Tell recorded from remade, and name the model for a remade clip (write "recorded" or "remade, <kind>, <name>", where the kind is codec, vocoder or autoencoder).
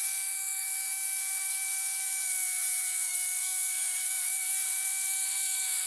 remade, codec, SNAC